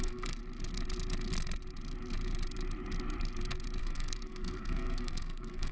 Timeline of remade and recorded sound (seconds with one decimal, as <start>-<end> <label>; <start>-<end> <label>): 0.0-0.4 remade; 0.4-3.8 recorded; 3.8-5.7 remade